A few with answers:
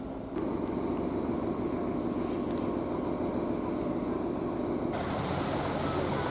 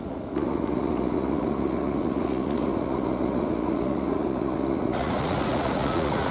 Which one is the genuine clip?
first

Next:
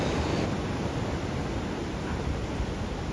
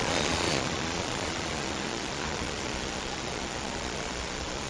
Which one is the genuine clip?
first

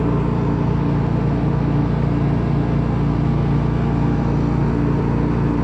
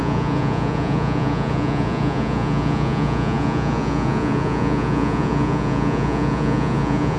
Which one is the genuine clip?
first